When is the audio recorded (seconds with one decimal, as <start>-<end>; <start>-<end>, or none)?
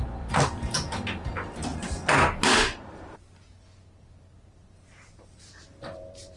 1.7-4.0